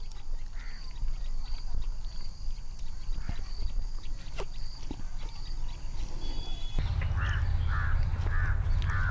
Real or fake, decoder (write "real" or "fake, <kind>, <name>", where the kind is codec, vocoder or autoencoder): real